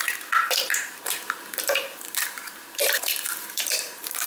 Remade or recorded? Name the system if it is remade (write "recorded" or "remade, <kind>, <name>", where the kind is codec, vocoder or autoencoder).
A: remade, vocoder, BigVGAN v2